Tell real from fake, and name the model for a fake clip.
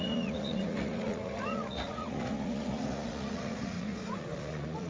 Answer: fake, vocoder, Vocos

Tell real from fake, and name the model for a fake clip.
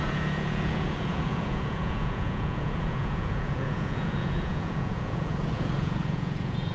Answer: fake, vocoder, Vocos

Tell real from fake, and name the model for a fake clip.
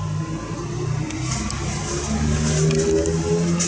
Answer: real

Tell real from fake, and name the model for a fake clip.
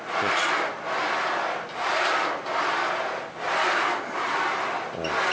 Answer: real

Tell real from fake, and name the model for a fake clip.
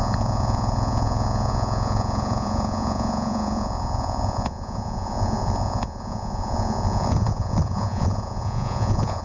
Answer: fake, vocoder, Vocos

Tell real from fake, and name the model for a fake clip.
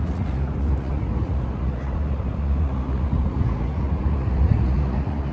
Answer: fake, vocoder, Vocos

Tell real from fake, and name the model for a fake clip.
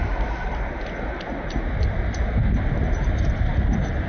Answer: real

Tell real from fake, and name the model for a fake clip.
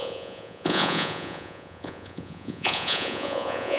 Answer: fake, vocoder, Vocos